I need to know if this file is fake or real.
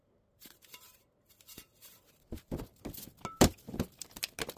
real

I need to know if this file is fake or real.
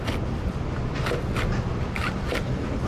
real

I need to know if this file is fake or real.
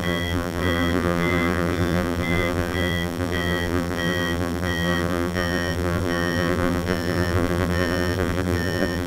fake